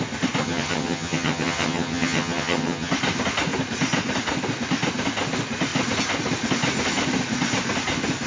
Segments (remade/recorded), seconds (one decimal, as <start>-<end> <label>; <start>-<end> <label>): 0.0-0.4 recorded; 0.4-2.9 remade; 2.9-8.3 recorded